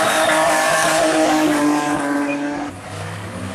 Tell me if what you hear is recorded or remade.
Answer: remade